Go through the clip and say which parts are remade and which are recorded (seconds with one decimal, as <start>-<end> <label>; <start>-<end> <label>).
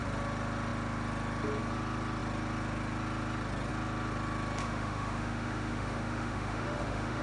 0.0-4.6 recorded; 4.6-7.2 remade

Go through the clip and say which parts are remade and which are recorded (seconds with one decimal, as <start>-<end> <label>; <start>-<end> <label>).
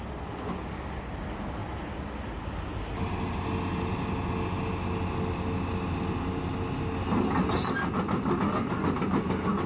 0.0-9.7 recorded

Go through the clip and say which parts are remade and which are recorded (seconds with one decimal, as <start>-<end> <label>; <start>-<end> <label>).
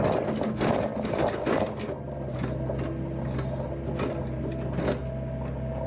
0.0-5.9 recorded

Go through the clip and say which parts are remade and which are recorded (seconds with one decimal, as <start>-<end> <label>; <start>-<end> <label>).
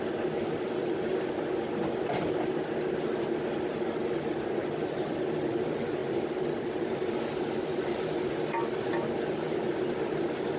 0.0-10.6 recorded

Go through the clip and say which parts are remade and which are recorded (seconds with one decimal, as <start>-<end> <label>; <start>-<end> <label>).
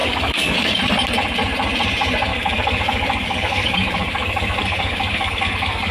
0.0-0.8 remade; 0.8-2.3 recorded; 2.3-5.9 remade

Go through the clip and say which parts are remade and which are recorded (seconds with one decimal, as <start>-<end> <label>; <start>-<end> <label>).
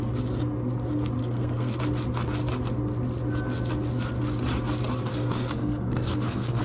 0.0-1.2 recorded; 1.2-1.8 remade; 1.8-5.1 recorded; 5.1-6.6 remade